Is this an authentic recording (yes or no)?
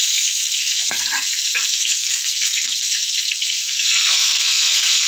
no